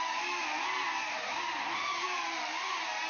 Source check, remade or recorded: recorded